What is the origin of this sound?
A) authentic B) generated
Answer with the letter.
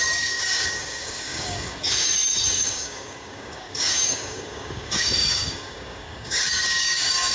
B